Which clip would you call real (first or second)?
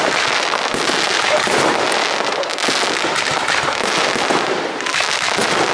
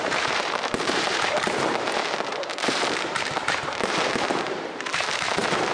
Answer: first